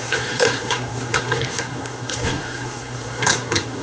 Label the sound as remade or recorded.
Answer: remade